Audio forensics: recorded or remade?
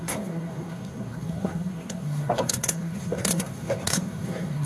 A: remade